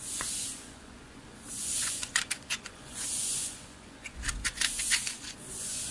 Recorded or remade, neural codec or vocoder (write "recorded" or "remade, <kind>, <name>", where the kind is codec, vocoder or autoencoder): remade, vocoder, Vocos